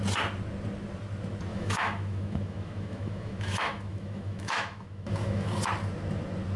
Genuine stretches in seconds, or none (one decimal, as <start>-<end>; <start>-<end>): 0.0-1.5; 5.5-6.6